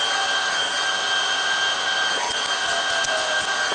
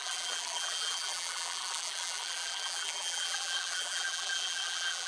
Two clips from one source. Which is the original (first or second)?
first